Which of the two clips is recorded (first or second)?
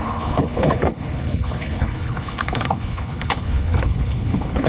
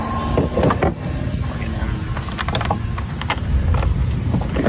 second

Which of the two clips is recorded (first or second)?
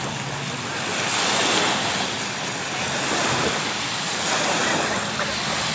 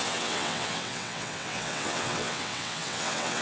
first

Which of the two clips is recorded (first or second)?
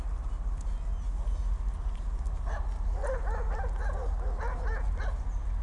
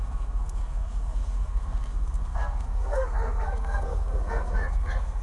first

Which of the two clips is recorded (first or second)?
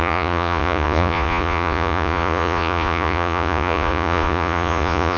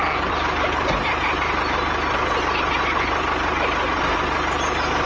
second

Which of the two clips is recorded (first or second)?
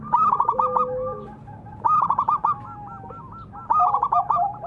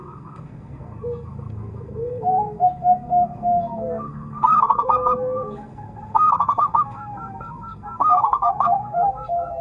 first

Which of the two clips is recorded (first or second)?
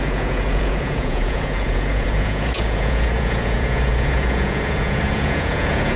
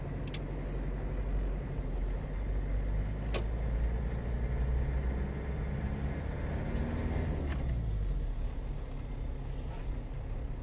second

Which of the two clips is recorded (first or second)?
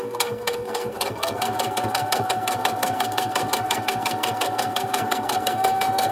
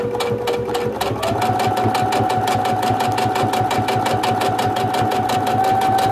second